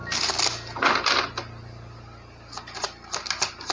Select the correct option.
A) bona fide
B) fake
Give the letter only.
A